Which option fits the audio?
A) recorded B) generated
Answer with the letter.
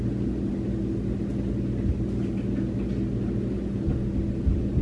A